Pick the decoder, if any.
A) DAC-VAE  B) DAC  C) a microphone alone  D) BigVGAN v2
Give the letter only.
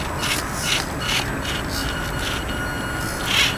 C